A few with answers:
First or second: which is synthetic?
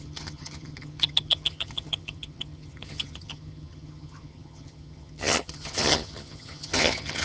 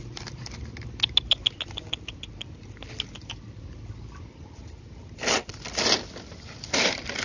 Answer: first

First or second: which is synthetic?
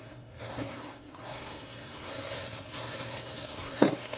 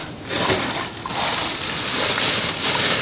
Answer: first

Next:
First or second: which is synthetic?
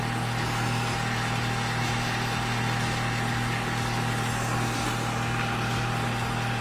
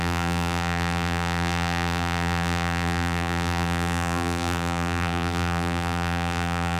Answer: second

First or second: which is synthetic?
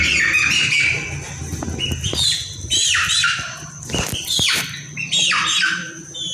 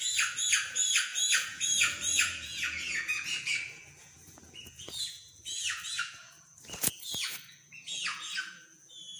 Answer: second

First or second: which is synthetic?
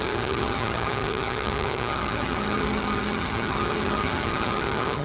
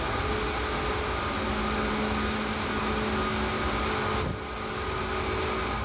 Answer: first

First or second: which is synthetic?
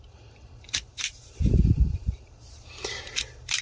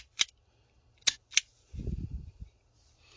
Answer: first